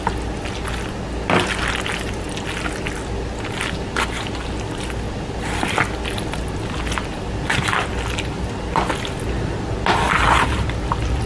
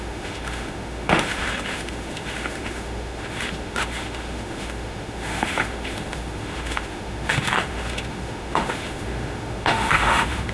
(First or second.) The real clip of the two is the first